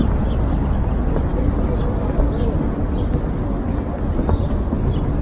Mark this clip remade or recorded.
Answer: recorded